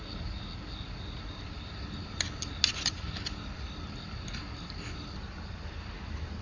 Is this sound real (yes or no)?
yes